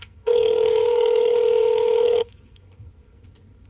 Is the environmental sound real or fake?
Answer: fake